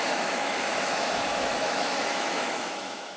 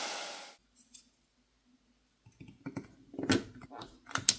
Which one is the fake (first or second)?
first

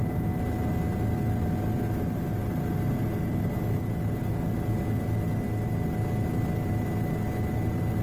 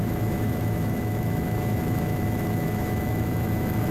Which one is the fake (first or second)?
second